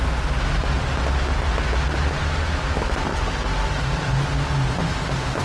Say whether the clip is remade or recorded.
recorded